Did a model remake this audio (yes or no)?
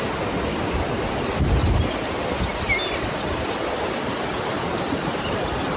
no